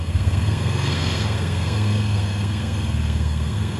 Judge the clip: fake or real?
fake